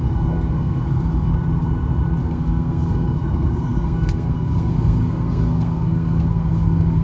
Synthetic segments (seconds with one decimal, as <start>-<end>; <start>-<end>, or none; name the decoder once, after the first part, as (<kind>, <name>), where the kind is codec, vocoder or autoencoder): 0.0-1.3 (codec, SNAC); 2.2-7.0